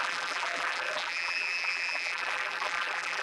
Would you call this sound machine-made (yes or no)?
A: yes